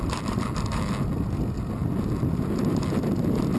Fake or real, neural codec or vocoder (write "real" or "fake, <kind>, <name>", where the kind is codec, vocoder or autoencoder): real